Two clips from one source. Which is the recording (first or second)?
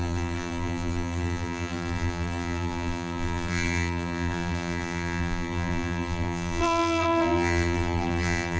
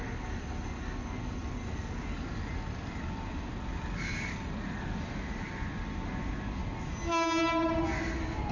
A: second